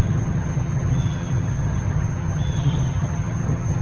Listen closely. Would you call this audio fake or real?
fake